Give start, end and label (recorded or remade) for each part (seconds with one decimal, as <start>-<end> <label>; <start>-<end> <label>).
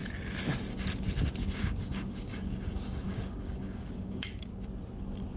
0.0-1.4 recorded; 1.4-4.6 remade; 4.6-5.4 recorded